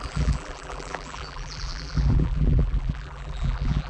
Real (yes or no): no